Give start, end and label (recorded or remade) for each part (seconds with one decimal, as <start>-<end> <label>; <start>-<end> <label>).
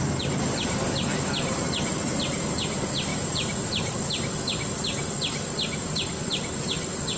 0.0-7.2 recorded